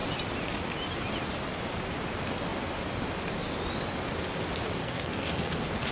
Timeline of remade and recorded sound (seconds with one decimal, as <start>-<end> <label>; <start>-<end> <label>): 0.0-4.8 recorded; 4.8-5.5 remade; 5.5-5.9 recorded